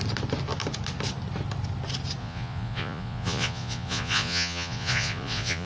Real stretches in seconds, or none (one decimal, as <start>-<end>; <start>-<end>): 0.0-2.2